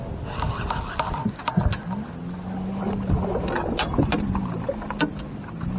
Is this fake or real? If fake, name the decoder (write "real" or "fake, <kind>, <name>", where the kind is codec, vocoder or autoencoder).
real